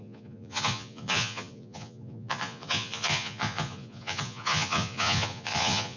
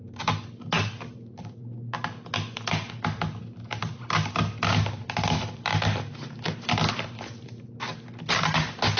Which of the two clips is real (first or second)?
second